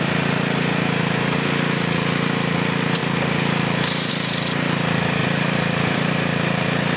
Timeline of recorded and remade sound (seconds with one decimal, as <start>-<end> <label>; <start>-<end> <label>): 0.0-5.2 recorded; 5.2-6.1 remade; 6.1-7.0 recorded